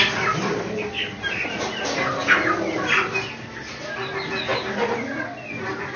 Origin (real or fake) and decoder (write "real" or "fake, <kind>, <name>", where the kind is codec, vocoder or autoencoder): real